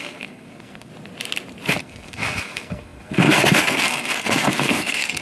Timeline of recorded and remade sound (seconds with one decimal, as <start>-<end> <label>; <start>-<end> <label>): 0.0-0.9 remade; 0.9-1.8 recorded; 1.8-5.2 remade